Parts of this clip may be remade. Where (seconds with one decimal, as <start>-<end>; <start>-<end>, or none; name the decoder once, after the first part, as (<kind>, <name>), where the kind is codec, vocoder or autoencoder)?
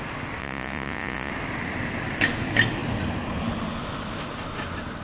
0.4-1.3 (vocoder, Vocos)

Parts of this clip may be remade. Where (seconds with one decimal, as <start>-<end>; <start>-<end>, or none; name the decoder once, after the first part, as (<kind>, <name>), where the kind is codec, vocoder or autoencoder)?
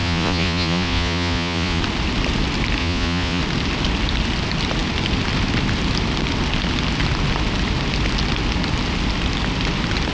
0.0-1.8 (vocoder, Vocos); 2.8-3.4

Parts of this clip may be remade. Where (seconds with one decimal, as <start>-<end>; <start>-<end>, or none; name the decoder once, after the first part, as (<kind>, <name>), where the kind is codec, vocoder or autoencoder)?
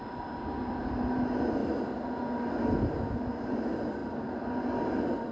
none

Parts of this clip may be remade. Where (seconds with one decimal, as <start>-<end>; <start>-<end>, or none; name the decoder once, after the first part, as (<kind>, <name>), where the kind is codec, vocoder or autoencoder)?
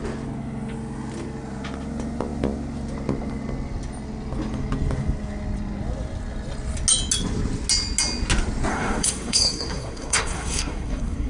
8.7-11.3 (codec, SNAC)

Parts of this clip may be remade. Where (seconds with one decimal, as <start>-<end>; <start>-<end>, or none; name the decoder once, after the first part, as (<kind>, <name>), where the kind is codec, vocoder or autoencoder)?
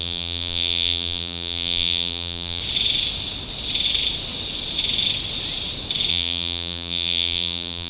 0.0-2.6 (vocoder, BigVGAN v2); 6.1-7.9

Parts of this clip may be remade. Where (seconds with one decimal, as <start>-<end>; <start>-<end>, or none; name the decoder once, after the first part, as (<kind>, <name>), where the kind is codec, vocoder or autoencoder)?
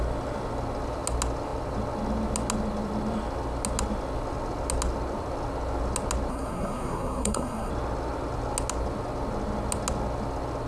6.3-7.7 (codec, SNAC)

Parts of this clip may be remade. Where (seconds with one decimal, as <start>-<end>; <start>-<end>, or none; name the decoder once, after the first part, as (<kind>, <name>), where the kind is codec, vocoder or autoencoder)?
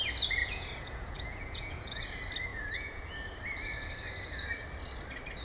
0.4-2.0 (vocoder, Vocos); 2.5-3.1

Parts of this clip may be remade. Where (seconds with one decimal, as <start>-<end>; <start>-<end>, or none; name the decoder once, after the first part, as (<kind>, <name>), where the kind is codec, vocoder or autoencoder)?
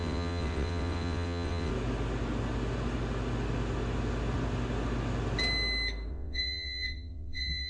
0.0-1.7 (vocoder, WaveNeXt); 6.1-7.7